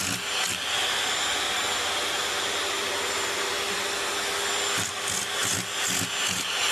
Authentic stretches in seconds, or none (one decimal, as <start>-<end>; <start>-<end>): 0.0-6.7